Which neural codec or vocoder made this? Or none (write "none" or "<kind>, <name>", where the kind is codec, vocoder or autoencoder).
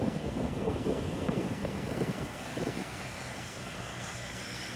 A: codec, SNAC